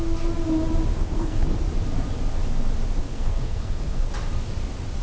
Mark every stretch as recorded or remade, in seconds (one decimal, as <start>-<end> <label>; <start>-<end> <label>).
0.0-0.9 recorded; 0.9-1.6 remade; 1.6-3.0 recorded; 3.0-4.1 remade; 4.1-5.0 recorded